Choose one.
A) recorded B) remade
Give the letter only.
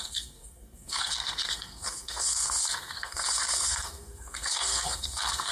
B